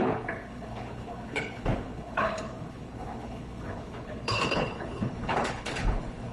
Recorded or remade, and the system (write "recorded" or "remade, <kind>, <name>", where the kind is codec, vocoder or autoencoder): remade, codec, HILCodec